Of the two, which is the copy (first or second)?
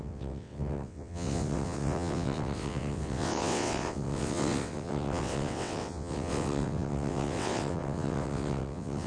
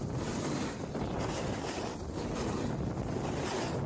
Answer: first